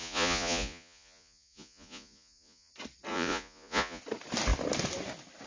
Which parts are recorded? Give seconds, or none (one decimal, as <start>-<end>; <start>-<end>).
2.7-3.1; 4.0-5.5